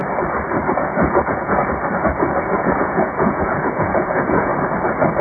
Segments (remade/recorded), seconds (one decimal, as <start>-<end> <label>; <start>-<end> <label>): 0.0-0.7 recorded; 0.7-1.6 remade; 1.6-2.5 recorded; 2.5-4.5 remade; 4.5-5.2 recorded